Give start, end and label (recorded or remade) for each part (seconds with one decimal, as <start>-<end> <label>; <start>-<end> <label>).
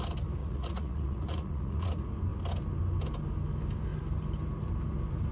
0.0-0.4 recorded; 0.4-1.9 remade; 1.9-5.3 recorded